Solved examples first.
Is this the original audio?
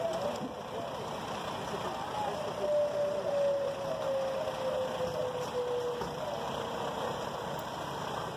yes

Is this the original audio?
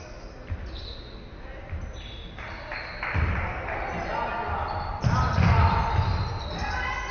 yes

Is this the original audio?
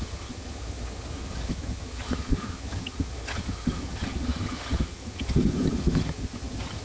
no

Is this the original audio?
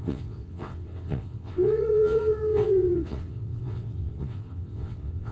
no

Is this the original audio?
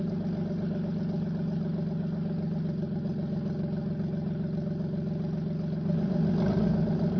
yes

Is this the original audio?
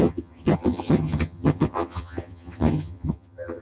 no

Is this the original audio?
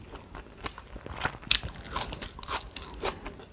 yes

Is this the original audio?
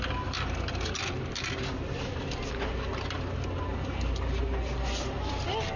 yes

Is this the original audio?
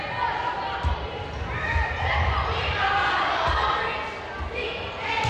yes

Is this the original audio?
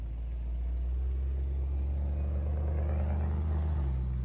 yes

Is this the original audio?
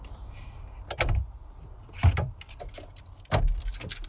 yes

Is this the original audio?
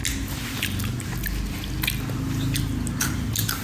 yes